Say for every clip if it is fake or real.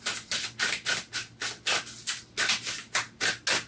real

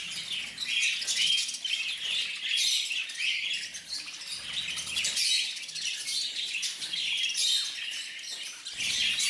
real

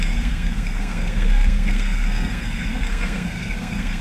fake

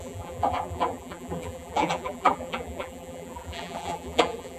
fake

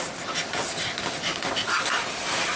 real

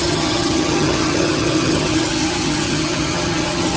fake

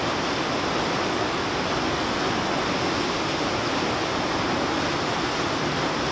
real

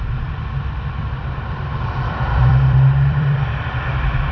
fake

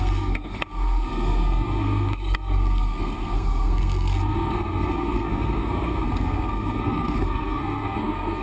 fake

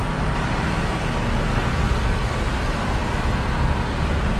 real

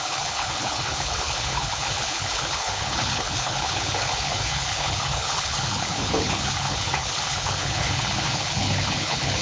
fake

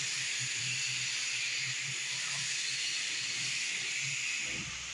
fake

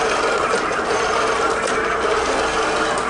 real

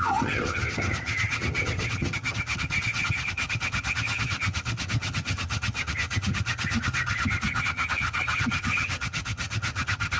fake